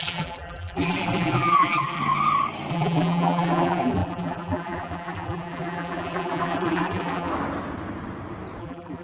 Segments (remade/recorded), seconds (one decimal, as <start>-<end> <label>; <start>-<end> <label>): 0.0-2.0 remade; 2.0-2.7 recorded; 2.7-7.3 remade; 7.3-8.6 recorded; 8.6-9.0 remade